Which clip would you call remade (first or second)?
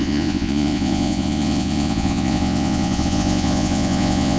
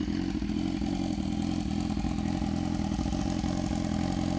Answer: first